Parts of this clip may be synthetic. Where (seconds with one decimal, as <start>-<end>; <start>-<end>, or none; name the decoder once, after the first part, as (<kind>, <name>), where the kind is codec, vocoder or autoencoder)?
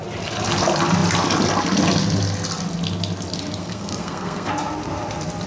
3.6-4.5 (codec, SNAC)